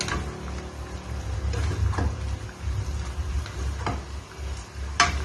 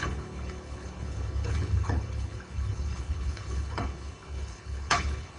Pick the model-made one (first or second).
second